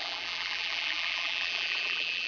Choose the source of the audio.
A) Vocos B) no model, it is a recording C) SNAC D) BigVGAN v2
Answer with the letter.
D